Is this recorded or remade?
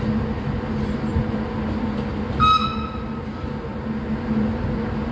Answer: recorded